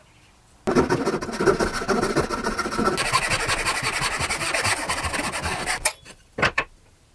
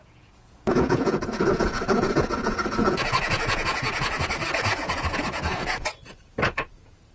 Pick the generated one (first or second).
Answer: second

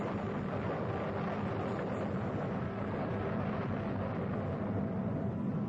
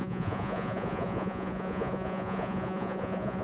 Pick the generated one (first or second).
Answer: second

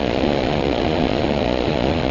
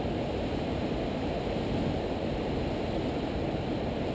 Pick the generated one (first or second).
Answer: first